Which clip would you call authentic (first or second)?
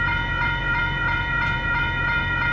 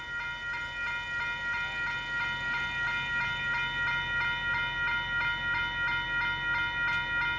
second